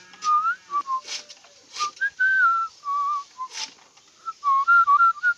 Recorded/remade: recorded